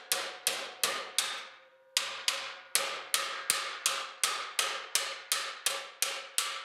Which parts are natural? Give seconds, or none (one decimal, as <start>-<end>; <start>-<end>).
0.0-6.6